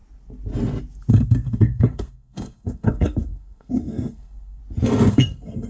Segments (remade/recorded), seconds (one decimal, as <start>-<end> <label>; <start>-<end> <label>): 0.0-1.1 recorded; 1.1-4.6 remade; 4.6-5.1 recorded; 5.1-5.7 remade